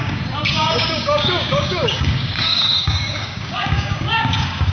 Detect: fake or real fake